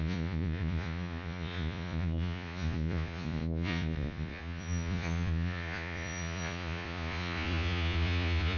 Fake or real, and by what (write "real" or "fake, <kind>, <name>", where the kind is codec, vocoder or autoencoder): fake, vocoder, Vocos